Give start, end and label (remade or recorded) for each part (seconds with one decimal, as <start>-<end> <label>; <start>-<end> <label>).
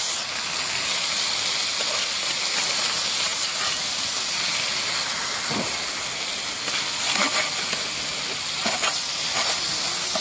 0.0-10.2 recorded